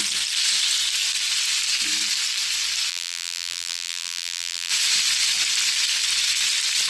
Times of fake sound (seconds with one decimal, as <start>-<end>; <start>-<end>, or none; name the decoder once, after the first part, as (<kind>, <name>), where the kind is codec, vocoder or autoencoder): 2.9-4.7 (vocoder, BigVGAN v2)